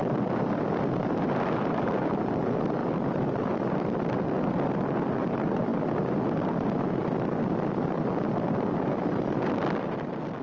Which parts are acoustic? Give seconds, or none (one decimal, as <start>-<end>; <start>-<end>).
0.0-2.8; 4.3-10.4